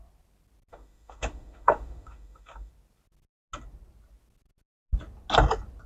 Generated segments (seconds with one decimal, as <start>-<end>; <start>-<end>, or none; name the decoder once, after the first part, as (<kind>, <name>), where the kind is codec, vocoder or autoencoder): 0.7-2.7 (autoencoder, DAC-VAE)